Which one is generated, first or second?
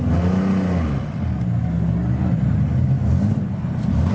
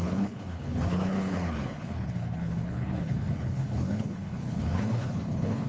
second